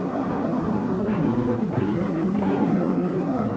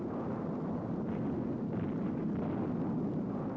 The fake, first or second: first